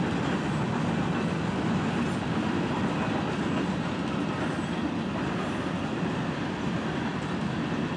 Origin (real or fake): real